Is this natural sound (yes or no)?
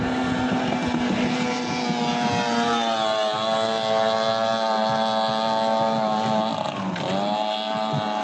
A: yes